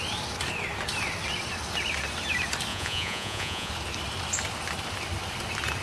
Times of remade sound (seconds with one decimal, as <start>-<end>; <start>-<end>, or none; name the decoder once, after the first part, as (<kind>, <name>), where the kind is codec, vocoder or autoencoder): 2.7-3.7 (vocoder, Vocos)